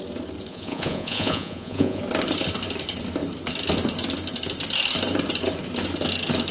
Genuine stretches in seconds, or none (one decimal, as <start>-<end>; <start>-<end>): 0.0-0.5; 2.0-6.5